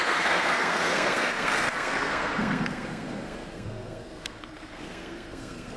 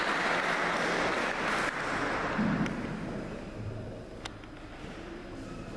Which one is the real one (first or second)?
second